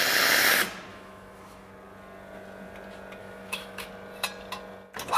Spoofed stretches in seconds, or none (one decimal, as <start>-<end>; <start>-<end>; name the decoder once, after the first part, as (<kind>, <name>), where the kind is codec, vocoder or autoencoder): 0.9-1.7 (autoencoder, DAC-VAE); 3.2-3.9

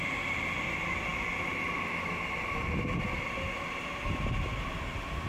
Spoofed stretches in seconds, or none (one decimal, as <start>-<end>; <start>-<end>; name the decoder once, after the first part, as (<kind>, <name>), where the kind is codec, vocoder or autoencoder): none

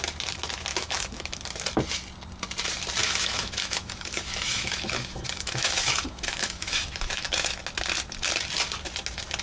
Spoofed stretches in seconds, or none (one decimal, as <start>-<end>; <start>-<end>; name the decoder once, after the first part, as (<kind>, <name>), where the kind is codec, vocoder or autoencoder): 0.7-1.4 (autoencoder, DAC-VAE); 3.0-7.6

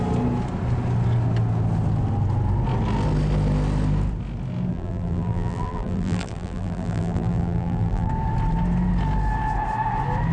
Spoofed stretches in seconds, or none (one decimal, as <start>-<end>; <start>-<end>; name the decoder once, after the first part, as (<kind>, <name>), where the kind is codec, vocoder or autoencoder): 4.7-8.1 (vocoder, BigVGAN v2)

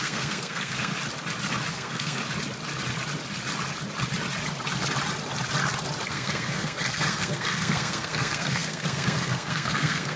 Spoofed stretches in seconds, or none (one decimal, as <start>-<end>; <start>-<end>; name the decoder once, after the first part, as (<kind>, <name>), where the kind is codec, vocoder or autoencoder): 0.0-0.9 (codec, SNAC); 1.7-2.2; 6.1-10.2

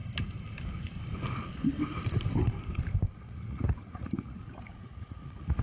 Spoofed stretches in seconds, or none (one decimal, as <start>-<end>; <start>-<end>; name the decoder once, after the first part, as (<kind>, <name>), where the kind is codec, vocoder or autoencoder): 3.4-5.6 (vocoder, Vocos)